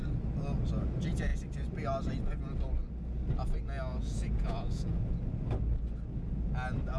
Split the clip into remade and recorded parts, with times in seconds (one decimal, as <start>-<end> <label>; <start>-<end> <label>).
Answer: 0.0-3.9 recorded; 3.9-5.0 remade; 5.0-7.0 recorded